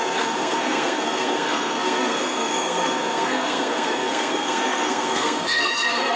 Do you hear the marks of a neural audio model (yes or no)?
yes